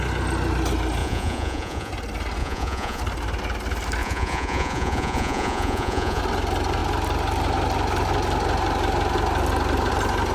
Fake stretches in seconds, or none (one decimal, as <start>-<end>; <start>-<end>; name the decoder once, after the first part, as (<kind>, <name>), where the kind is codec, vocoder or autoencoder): 1.0-1.9 (vocoder, Vocos); 2.4-3.0; 4.0-6.2